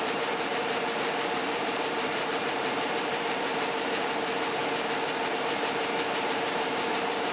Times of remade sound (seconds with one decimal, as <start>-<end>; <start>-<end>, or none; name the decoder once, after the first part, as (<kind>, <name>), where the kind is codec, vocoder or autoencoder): 0.0-4.6 (vocoder, BigVGAN v2); 5.5-7.3